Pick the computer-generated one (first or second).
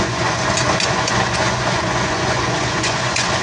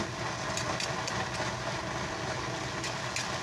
first